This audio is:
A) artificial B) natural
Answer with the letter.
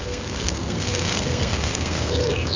A